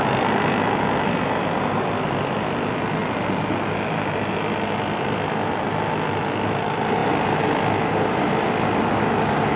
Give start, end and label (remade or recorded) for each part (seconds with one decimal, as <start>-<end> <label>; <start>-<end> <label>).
0.0-9.6 recorded